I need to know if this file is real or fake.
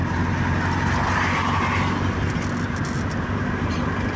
real